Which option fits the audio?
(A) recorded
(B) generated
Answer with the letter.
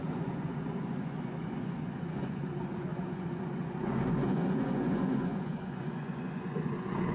B